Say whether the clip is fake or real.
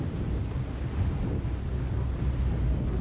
real